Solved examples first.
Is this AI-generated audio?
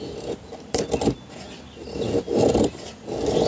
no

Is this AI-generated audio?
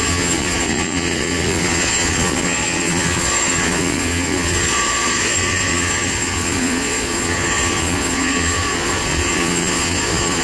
yes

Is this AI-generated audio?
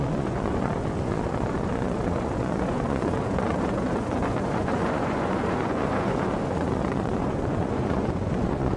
yes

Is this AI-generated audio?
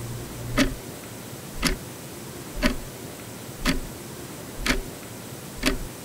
no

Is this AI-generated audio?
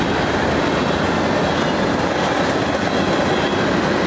no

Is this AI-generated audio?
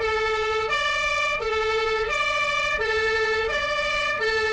yes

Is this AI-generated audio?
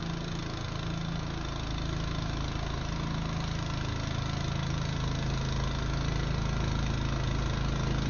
no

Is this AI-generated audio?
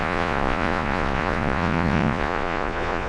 yes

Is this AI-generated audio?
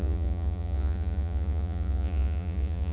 yes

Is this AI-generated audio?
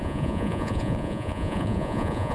yes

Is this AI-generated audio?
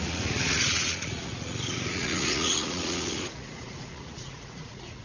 yes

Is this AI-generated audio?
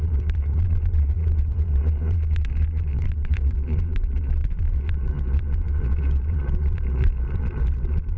yes